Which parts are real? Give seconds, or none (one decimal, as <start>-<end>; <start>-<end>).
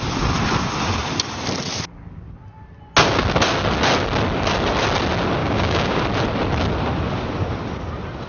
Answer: 0.0-5.4; 6.0-8.3